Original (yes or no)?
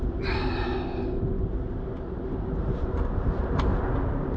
yes